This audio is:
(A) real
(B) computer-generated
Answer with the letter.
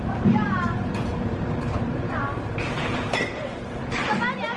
B